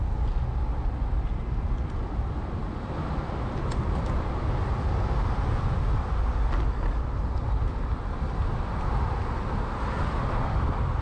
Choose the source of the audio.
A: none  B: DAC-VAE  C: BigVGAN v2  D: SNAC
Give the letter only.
A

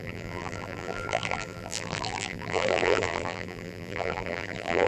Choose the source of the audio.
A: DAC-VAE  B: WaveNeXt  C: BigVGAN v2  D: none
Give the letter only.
C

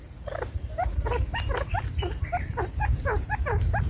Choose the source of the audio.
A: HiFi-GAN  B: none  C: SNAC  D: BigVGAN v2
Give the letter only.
D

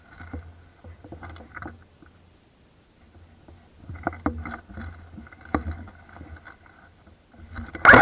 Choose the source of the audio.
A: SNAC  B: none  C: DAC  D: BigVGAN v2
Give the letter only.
B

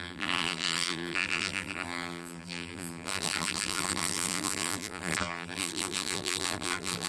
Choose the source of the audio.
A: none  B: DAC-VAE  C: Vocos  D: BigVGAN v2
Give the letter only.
D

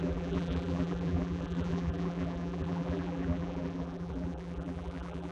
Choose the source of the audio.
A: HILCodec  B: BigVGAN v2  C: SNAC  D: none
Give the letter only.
B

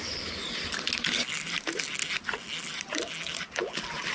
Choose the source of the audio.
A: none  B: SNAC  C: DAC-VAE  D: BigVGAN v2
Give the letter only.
A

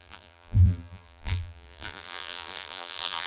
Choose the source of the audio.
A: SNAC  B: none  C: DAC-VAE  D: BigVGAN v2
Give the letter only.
D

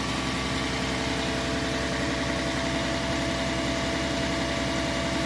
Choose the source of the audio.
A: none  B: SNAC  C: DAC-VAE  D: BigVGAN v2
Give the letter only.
A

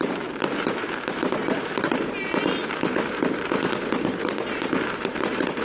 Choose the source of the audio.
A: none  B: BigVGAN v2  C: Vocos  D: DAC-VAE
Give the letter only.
B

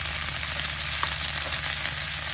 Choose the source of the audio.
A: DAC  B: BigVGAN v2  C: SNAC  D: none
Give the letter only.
D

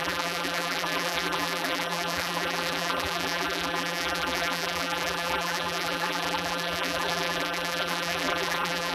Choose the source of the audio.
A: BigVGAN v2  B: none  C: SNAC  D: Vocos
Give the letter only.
A